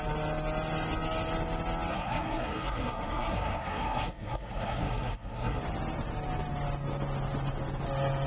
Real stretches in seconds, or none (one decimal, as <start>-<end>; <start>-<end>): 0.0-1.9; 5.6-8.3